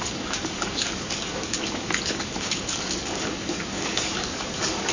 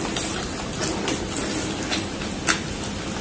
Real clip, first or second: second